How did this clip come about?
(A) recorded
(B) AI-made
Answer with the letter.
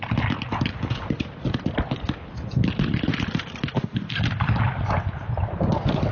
A